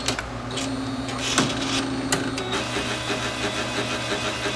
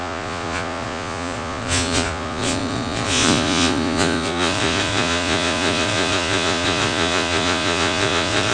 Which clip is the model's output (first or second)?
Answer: second